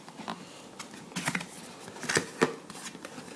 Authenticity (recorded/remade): recorded